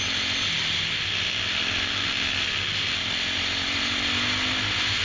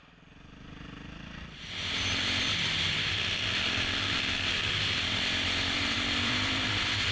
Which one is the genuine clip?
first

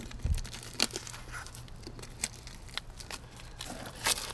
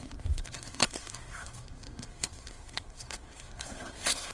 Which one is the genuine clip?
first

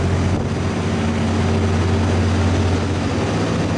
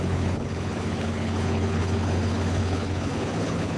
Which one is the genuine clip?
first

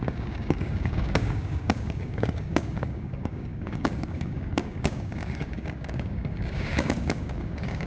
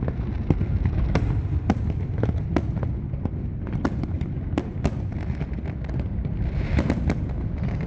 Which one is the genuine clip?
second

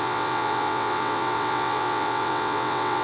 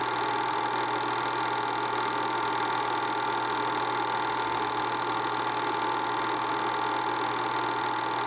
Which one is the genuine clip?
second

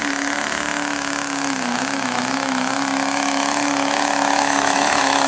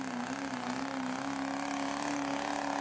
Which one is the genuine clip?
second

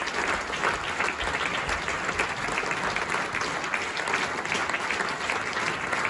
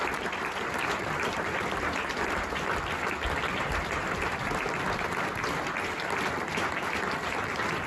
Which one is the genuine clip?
first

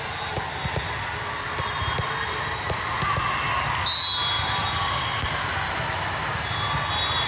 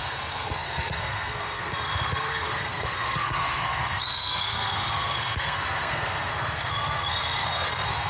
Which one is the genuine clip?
first